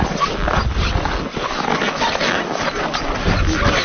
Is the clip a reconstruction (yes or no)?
no